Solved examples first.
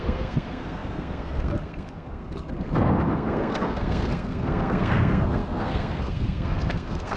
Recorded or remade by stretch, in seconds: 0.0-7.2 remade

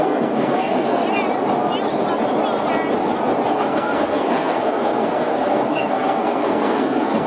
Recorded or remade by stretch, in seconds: 0.0-1.0 remade; 1.0-3.5 recorded; 3.5-7.3 remade

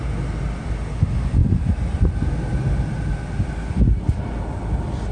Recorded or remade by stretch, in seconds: 0.0-5.1 recorded

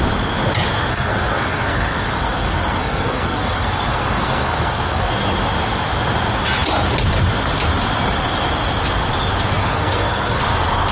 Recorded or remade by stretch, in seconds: 0.0-0.9 recorded; 0.9-5.1 remade; 5.1-9.6 recorded; 9.6-10.4 remade; 10.4-10.9 recorded

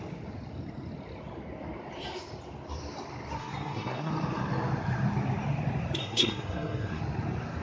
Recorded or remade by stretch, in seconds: 0.0-3.4 recorded; 3.4-4.1 remade; 4.1-6.0 recorded; 6.0-7.0 remade; 7.0-7.6 recorded

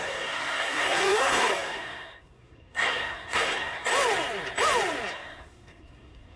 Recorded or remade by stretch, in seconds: 0.0-3.9 remade; 3.9-5.1 recorded; 5.1-6.4 remade

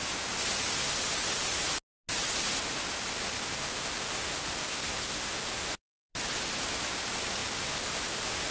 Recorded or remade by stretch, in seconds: 0.0-4.7 recorded; 4.7-5.3 remade; 5.3-8.5 recorded